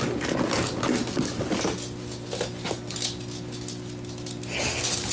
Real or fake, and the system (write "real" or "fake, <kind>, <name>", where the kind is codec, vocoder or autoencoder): real